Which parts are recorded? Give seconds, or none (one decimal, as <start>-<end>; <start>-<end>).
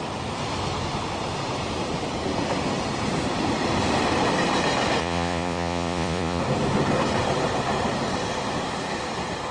0.0-5.0; 6.4-9.5